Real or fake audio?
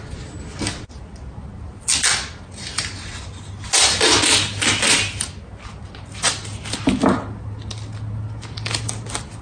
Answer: real